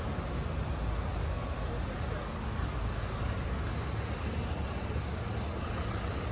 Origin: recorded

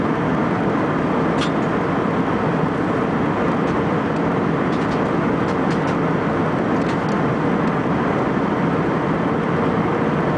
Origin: recorded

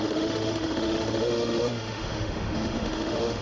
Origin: remade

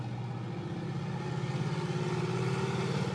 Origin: recorded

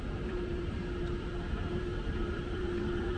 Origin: remade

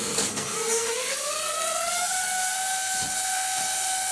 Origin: remade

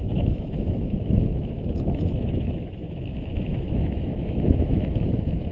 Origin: remade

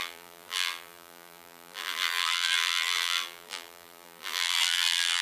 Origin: remade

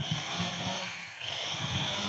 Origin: remade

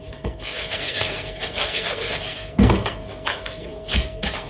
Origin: remade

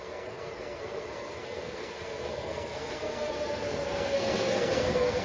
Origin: remade